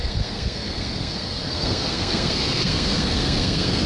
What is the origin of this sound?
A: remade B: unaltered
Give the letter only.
A